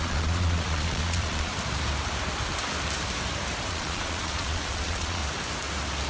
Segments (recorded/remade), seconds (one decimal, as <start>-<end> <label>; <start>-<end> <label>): 0.0-1.5 remade; 1.5-3.7 recorded; 3.7-5.2 remade; 5.2-6.1 recorded